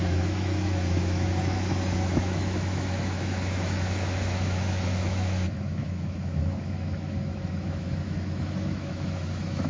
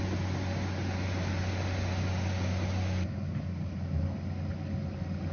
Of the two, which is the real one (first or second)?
second